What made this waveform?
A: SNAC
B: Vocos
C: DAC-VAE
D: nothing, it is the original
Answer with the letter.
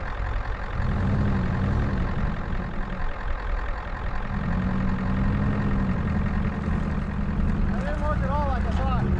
D